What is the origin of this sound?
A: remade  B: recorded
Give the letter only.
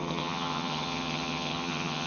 A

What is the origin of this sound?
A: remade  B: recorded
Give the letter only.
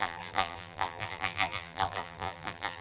A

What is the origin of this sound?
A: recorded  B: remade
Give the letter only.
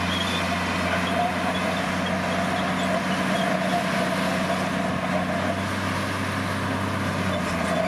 A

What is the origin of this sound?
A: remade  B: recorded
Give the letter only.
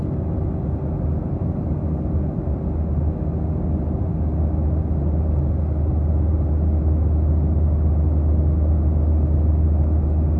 B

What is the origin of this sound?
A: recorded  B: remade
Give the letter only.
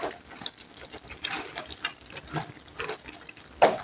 A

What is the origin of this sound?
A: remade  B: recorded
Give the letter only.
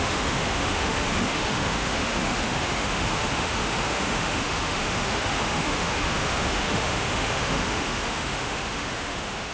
A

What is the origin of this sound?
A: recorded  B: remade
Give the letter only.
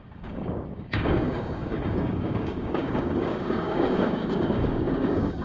B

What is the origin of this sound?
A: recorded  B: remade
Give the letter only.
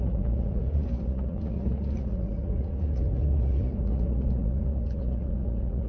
B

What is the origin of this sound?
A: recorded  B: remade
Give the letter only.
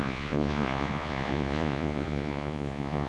B